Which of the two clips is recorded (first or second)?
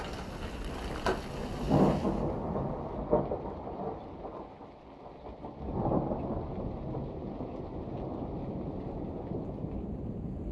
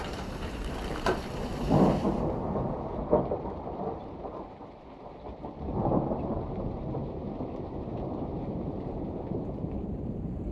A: first